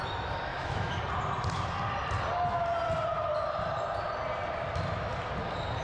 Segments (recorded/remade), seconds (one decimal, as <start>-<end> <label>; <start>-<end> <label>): 0.0-0.5 recorded; 0.5-1.0 remade; 1.0-5.8 recorded